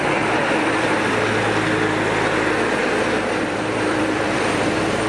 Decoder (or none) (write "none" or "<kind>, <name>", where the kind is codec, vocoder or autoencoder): vocoder, BigVGAN v2